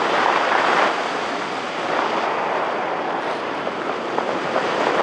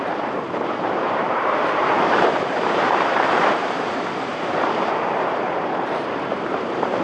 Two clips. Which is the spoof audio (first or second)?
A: second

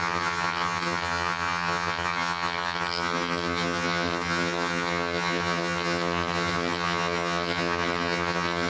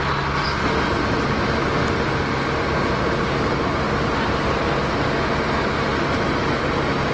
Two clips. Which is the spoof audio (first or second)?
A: first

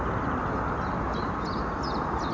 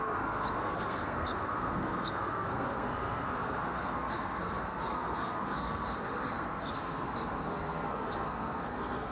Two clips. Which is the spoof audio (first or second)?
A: second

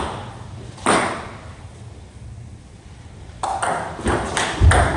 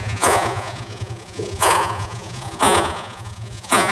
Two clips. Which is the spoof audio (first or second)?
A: second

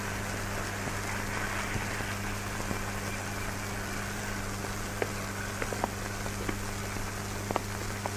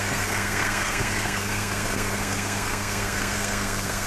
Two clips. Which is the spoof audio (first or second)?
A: second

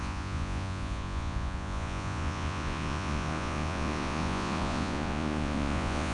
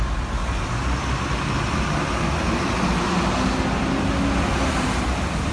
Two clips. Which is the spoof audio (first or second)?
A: first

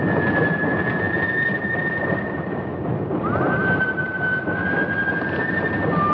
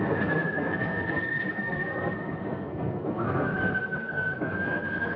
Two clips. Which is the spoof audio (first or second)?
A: second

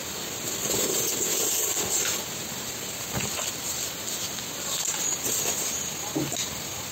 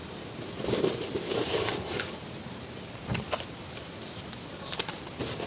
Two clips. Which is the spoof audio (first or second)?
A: second